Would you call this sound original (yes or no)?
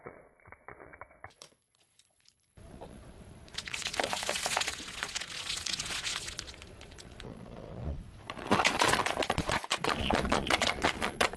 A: no